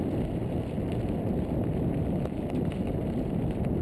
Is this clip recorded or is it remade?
recorded